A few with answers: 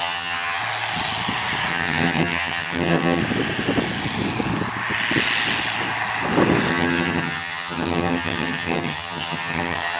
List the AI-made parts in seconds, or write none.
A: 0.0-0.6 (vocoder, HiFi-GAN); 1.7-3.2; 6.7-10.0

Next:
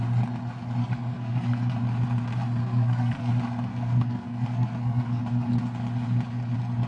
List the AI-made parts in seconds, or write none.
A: 0.8-1.6 (codec, SNAC); 2.6-3.3; 3.7-5.2

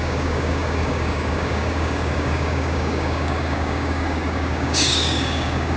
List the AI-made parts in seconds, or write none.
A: 0.0-5.8 (codec, DAC)

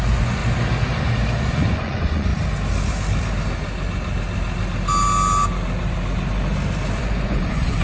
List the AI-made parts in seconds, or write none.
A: 0.0-0.4 (vocoder, Vocos); 1.4-2.3; 7.0-7.8

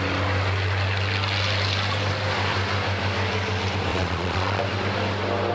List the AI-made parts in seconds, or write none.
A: 3.9-4.6 (vocoder, Vocos)

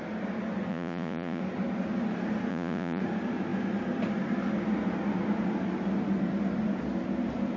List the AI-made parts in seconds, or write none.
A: 0.7-1.4 (vocoder, Vocos); 2.5-3.0

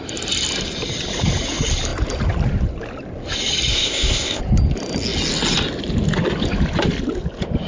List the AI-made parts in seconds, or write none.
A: 3.7-4.4 (codec, ZipCodec)

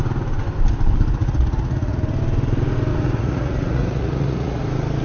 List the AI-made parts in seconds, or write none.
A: 1.2-2.0 (vocoder, Vocos); 2.9-4.6